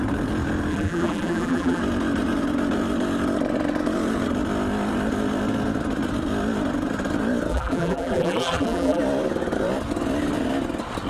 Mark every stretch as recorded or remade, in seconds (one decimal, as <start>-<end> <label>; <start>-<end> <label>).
0.0-0.7 recorded; 0.7-1.8 remade; 1.8-7.5 recorded; 7.5-9.0 remade; 9.0-11.1 recorded